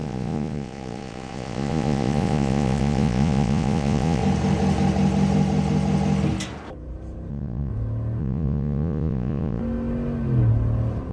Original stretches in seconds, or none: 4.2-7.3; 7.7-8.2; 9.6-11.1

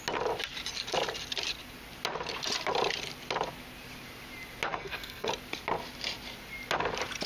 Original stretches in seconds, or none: 0.0-4.7; 5.3-7.3

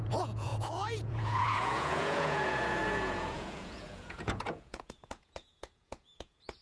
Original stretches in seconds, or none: none

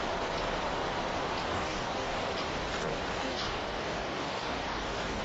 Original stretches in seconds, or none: 0.0-1.5; 2.3-3.2

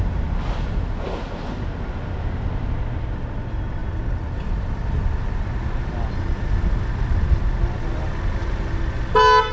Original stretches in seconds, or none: 0.0-9.5